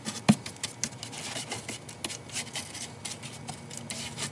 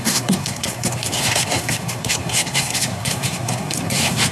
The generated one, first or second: second